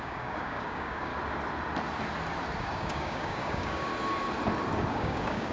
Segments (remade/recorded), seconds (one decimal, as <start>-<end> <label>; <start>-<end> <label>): 0.0-1.1 remade; 1.1-2.6 recorded; 2.6-3.9 remade; 3.9-4.9 recorded; 4.9-5.5 remade